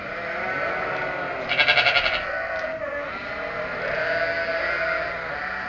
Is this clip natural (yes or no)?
yes